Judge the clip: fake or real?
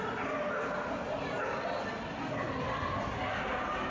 real